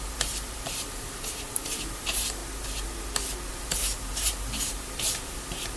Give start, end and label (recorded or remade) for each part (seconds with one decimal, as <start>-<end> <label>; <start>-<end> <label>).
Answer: 0.0-2.4 remade; 2.4-3.5 recorded; 3.5-5.8 remade